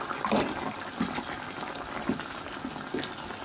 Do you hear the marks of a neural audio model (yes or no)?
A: no